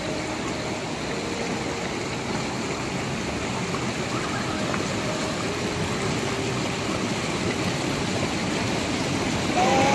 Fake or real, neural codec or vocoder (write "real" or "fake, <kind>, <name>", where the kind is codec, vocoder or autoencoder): real